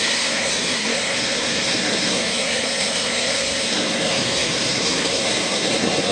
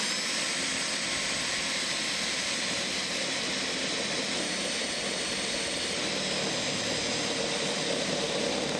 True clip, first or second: second